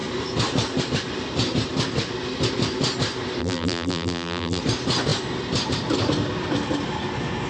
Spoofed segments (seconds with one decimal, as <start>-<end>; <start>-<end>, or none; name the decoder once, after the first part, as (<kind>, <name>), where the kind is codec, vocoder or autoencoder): 3.4-4.6 (vocoder, BigVGAN v2)